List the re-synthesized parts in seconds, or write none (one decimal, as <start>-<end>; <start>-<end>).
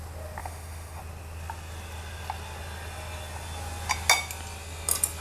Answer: 0.4-1.0